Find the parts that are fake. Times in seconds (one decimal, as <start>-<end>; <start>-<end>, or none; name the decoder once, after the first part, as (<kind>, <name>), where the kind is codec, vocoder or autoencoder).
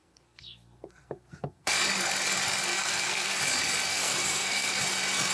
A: 0.0-1.7 (codec, SNAC); 2.7-3.4; 3.9-4.8